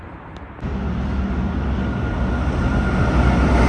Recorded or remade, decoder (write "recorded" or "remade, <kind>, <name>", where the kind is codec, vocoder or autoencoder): recorded